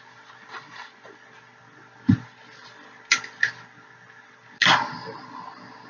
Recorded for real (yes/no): yes